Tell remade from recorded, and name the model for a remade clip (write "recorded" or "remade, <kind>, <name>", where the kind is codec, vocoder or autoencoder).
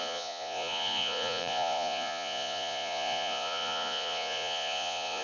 remade, vocoder, Vocos